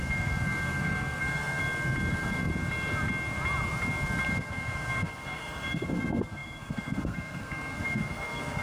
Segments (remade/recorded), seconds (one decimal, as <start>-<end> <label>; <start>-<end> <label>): 0.0-1.6 remade; 1.6-2.1 recorded; 2.1-2.5 remade; 2.5-4.3 recorded; 4.3-8.6 remade